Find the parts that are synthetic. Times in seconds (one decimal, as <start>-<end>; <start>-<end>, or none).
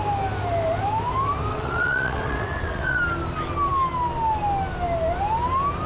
1.5-3.0